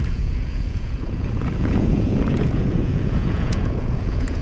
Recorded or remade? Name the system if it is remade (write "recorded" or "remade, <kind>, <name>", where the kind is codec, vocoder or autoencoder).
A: remade, vocoder, Vocos